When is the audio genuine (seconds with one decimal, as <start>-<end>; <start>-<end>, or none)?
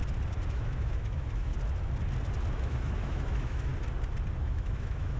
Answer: 0.0-0.5; 1.5-2.5; 3.7-4.4